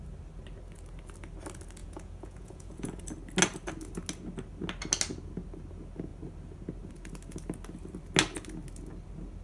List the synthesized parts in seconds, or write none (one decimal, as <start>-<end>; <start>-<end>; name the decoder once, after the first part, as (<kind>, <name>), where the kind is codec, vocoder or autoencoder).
1.8-3.0 (vocoder, Vocos)